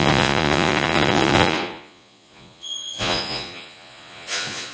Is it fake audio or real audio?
fake